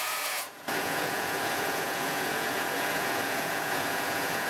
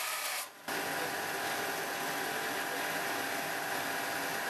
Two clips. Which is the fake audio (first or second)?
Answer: first